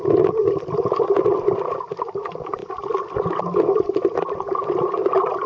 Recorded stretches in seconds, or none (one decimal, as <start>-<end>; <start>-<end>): 0.0-5.5